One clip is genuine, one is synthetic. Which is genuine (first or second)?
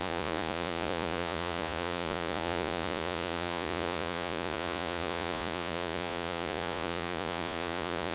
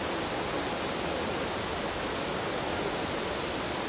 second